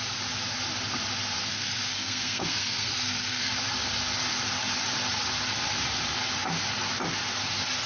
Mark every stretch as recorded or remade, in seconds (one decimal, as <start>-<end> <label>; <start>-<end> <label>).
0.0-1.5 recorded; 1.5-3.5 remade; 3.5-7.9 recorded